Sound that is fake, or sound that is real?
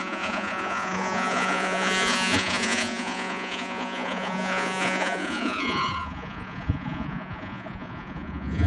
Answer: fake